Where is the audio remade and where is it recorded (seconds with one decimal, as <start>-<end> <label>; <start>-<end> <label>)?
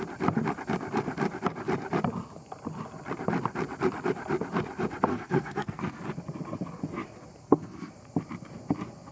0.0-5.1 recorded; 5.1-6.0 remade; 6.0-7.4 recorded; 7.4-7.9 remade; 7.9-9.1 recorded